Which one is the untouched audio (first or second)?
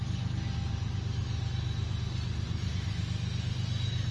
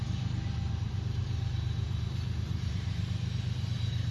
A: first